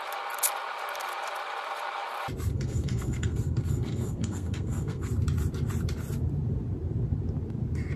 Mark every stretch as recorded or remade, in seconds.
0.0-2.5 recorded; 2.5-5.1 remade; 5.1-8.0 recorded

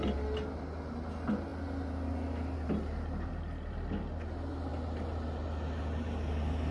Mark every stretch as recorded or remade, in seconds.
0.0-6.7 recorded

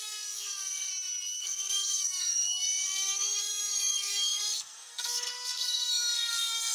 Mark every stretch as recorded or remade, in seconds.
0.0-0.9 remade; 0.9-1.4 recorded; 1.4-6.7 remade

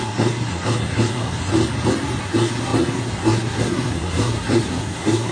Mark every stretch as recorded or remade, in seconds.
0.0-1.5 remade; 1.5-2.2 recorded; 2.2-5.3 remade

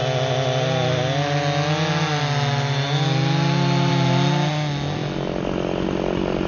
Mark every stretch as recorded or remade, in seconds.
0.0-6.5 recorded

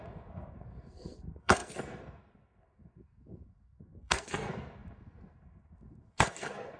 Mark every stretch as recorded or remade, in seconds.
0.0-6.8 remade

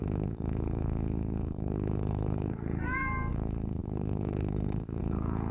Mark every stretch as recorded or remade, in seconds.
0.0-5.5 remade

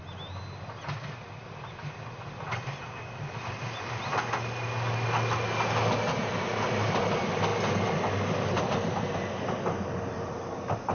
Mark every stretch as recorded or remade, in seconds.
0.0-10.9 recorded